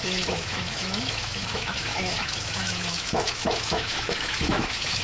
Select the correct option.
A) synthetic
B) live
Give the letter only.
A